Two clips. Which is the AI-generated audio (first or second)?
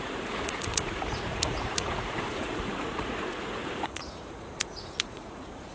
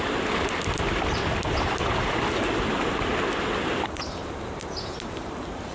first